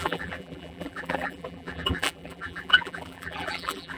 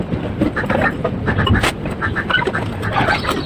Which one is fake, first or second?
first